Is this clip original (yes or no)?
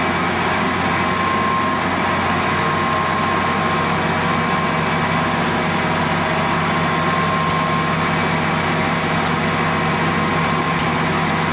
yes